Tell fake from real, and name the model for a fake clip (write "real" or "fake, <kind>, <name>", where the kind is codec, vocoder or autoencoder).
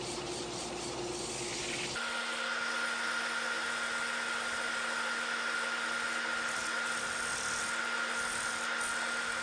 real